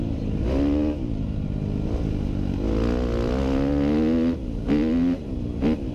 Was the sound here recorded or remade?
recorded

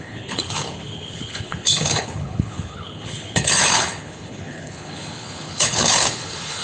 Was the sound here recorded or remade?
remade